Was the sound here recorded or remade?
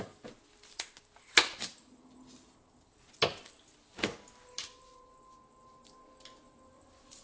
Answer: recorded